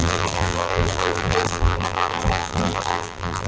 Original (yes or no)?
no